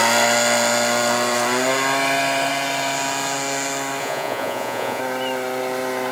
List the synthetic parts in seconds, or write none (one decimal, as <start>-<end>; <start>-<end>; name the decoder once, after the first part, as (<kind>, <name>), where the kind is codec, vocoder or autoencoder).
4.0-5.0 (vocoder, Vocos)